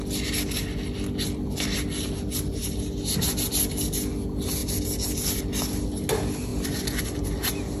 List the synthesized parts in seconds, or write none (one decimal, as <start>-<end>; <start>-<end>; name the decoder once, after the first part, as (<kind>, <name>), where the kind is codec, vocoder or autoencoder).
6.5-7.0 (vocoder, BigVGAN v2)